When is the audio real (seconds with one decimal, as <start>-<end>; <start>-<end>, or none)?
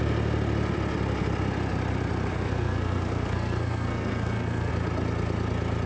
0.0-2.3; 4.7-5.9